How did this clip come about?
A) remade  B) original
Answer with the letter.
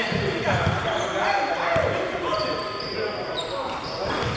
B